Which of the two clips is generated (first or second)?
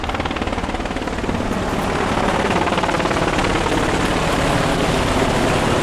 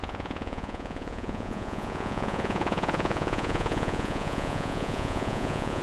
second